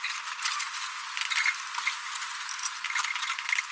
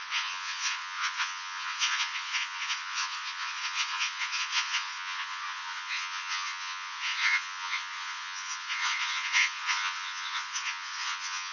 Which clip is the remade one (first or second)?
second